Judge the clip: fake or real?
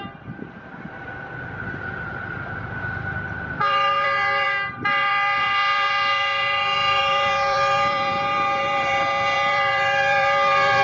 fake